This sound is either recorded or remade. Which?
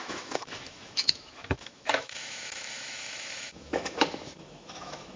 remade